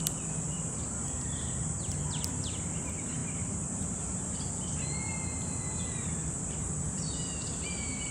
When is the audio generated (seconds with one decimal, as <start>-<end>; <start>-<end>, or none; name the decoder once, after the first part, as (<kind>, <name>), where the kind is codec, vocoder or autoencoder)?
none